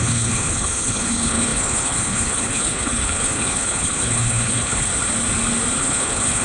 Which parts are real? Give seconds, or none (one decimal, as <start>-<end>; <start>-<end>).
4.9-5.8